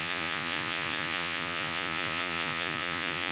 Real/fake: fake